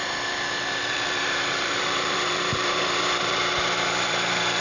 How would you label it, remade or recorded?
remade